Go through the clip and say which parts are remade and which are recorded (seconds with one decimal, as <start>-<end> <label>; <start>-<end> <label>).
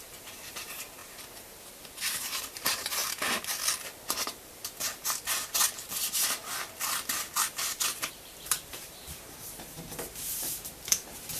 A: 0.0-3.0 remade; 3.0-7.4 recorded; 7.4-11.4 remade